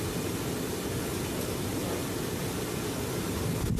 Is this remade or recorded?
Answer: recorded